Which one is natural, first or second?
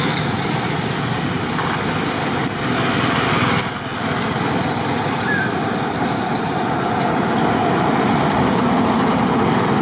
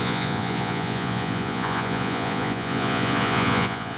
first